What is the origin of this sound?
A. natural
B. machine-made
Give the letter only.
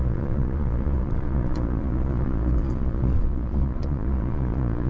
B